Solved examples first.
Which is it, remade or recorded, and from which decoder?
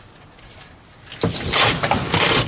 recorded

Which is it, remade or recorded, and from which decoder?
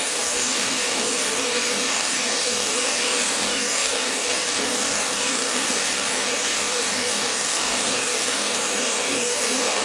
remade, codec, DAC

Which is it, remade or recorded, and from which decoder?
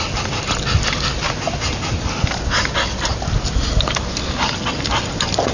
recorded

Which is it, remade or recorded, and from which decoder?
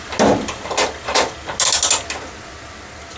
recorded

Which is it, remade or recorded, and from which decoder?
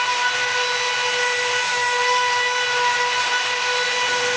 recorded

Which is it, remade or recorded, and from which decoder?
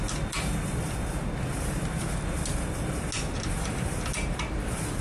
recorded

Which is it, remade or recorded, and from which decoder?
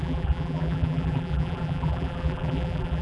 remade, vocoder, BigVGAN v2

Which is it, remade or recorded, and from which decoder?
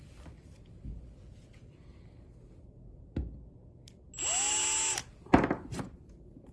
recorded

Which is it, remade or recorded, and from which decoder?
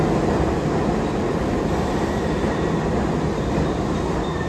recorded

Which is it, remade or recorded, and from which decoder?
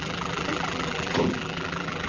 remade, vocoder, BigVGAN v2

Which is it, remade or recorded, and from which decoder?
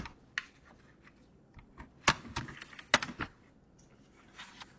recorded